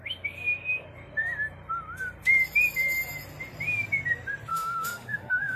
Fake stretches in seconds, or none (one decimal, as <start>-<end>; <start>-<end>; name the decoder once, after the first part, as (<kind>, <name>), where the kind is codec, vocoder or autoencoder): 4.5-5.6 (autoencoder, DAC-VAE)